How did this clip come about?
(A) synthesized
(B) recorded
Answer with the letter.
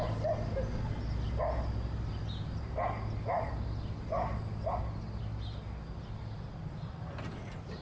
B